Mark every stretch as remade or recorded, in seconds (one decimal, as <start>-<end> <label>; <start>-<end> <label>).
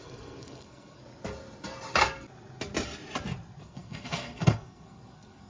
0.0-1.0 remade; 1.0-3.6 recorded; 3.6-5.5 remade